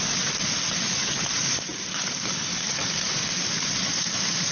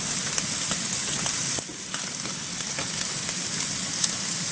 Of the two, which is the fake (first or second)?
first